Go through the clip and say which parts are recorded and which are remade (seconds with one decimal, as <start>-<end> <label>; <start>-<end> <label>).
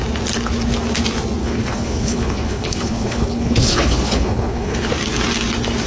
0.0-1.4 recorded; 1.4-4.9 remade; 4.9-5.9 recorded